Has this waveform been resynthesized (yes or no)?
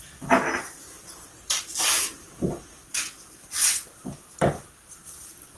no